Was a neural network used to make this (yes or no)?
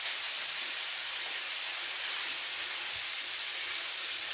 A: no